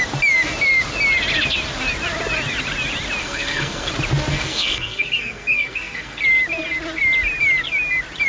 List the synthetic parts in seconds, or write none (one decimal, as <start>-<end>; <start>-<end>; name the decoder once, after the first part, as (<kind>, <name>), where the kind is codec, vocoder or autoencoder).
3.2-3.9 (codec, SNAC); 4.3-6.2